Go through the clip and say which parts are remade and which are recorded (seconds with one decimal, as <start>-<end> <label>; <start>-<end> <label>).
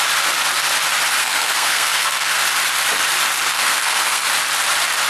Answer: 0.0-1.2 recorded; 1.2-2.3 remade; 2.3-3.5 recorded; 3.5-4.2 remade; 4.2-5.1 recorded